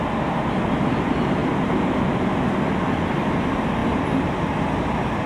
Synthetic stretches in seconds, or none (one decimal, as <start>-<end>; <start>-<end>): none